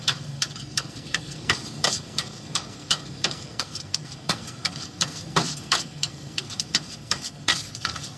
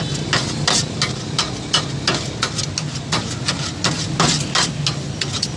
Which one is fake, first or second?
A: first